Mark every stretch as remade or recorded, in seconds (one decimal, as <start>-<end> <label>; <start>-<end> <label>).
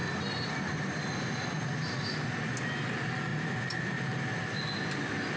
0.0-5.4 recorded